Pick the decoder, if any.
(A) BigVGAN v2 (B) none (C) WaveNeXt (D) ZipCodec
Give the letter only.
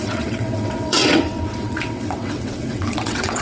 C